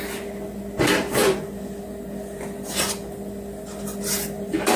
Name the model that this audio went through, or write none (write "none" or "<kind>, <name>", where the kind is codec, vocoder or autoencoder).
none